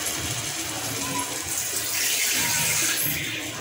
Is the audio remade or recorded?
recorded